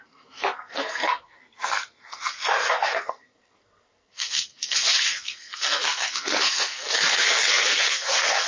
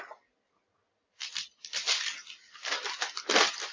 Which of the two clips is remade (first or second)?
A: first